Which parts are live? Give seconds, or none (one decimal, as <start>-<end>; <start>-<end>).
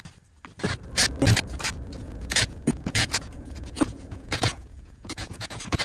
0.0-2.0